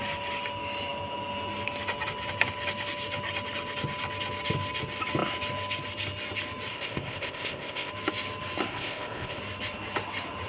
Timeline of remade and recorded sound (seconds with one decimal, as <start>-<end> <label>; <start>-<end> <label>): 0.0-6.7 recorded; 6.7-7.9 remade; 7.9-8.7 recorded; 8.7-9.4 remade; 9.4-10.5 recorded